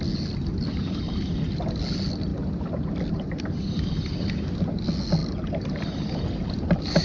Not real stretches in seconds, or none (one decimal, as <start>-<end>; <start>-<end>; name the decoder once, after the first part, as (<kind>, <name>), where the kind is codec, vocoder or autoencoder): none